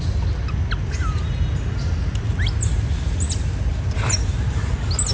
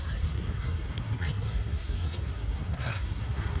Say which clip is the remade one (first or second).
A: second